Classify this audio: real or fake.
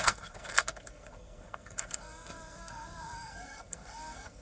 fake